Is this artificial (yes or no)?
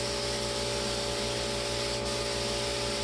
no